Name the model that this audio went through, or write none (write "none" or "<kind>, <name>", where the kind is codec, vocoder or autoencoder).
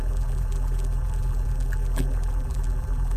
vocoder, BigVGAN v2